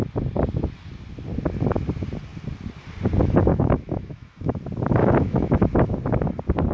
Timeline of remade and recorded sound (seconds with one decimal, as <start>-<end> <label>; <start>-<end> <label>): 0.0-3.5 recorded; 3.5-4.6 remade; 4.6-5.0 recorded; 5.0-5.6 remade; 5.6-6.7 recorded